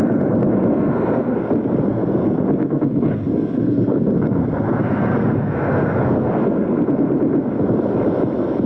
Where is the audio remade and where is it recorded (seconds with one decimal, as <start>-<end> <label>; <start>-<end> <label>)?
0.0-0.7 recorded; 0.7-1.5 remade; 1.5-1.9 recorded; 1.9-6.8 remade; 6.8-8.7 recorded